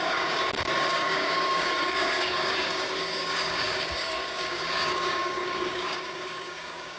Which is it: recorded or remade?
remade